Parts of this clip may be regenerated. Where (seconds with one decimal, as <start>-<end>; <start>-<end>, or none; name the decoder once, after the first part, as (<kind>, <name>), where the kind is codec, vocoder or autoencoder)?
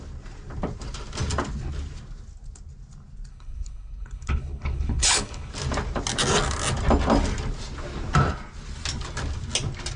3.3-5.5 (codec, HILCodec)